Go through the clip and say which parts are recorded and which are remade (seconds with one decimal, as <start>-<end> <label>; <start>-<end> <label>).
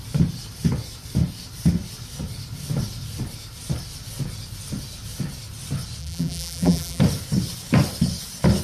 0.0-6.0 recorded; 6.0-7.0 remade; 7.0-8.6 recorded